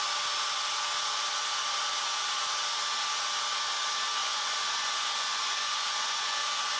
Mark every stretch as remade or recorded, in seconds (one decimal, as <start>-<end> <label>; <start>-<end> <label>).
0.0-4.2 recorded; 4.2-6.8 remade